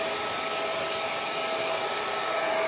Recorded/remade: recorded